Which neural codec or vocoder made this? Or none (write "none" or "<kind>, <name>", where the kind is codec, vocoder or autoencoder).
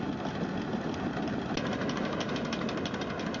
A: none